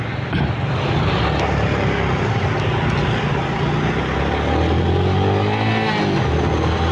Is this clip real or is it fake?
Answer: real